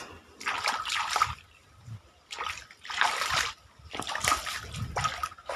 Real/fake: real